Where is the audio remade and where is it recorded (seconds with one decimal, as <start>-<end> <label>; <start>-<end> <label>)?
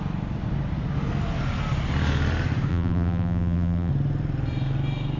0.0-2.7 recorded; 2.7-3.9 remade; 3.9-5.2 recorded